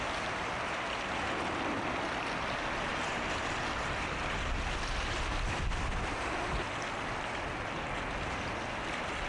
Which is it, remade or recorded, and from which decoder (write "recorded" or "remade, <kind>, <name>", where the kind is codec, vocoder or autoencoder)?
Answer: recorded